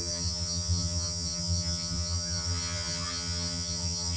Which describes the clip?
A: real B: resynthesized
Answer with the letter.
B